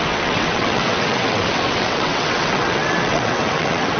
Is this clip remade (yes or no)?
yes